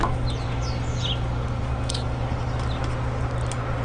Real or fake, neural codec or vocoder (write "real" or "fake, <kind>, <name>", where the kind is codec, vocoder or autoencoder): real